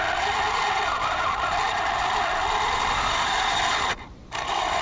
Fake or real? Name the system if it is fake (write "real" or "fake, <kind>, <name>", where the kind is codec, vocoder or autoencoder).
real